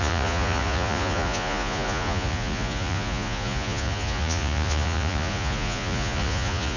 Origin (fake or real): fake